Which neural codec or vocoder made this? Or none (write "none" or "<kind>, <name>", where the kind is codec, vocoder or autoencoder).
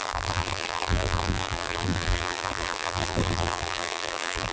vocoder, BigVGAN v2